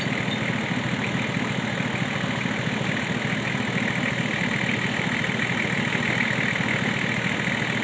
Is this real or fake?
real